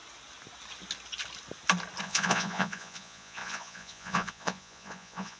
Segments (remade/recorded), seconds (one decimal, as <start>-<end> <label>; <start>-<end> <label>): 0.0-2.0 recorded; 2.0-5.4 remade